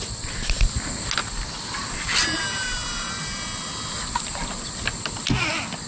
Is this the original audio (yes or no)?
yes